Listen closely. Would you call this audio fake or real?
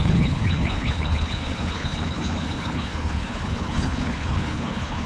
fake